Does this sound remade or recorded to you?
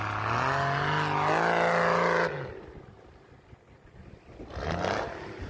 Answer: recorded